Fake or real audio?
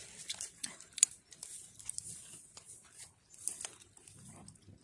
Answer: real